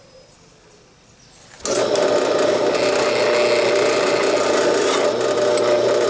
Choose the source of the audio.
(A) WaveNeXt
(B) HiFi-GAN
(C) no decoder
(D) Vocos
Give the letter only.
C